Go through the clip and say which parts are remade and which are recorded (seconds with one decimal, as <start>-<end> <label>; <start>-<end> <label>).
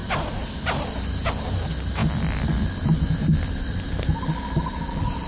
0.0-5.3 recorded